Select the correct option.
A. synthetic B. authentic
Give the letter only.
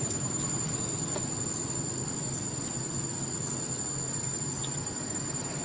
B